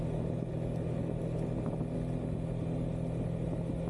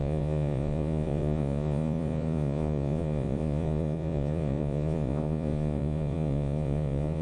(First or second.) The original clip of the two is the first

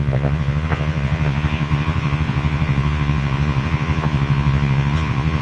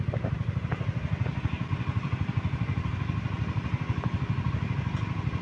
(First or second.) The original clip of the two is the second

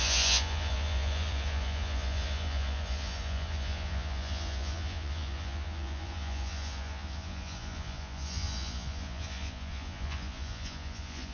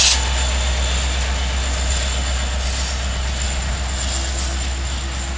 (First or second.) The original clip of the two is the second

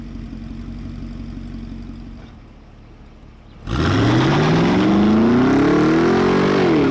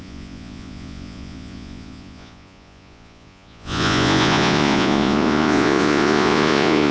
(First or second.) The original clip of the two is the first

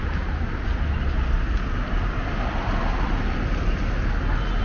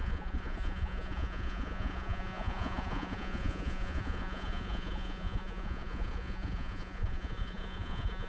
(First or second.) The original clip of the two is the first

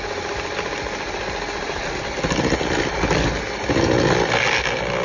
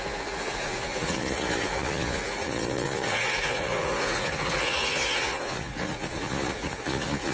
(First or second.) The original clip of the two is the first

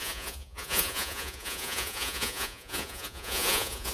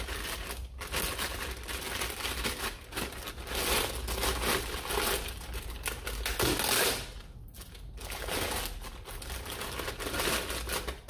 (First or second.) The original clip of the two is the second